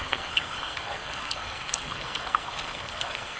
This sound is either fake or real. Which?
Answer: fake